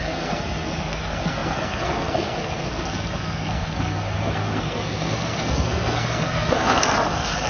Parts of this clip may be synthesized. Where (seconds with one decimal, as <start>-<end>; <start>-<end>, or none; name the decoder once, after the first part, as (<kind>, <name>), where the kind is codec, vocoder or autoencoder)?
0.0-7.5 (codec, SNAC)